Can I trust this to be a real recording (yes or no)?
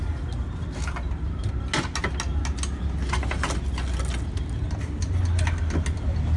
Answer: yes